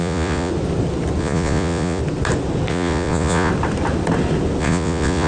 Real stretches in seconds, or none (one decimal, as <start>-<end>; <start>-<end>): 0.5-1.2; 2.0-2.7; 3.5-4.6